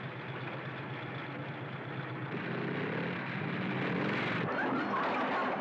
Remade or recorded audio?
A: recorded